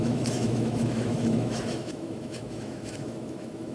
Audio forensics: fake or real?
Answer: fake